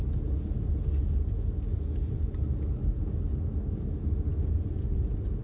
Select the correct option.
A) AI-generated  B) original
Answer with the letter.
B